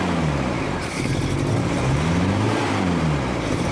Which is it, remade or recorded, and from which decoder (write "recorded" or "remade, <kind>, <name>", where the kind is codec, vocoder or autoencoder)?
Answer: remade, vocoder, BigVGAN v2